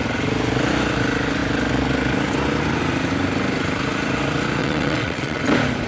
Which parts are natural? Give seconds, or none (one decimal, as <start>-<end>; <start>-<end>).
0.0-4.6; 5.4-5.9